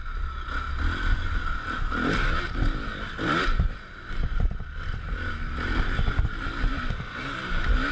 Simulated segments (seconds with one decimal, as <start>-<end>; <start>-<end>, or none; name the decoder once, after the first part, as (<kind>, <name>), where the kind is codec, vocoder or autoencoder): none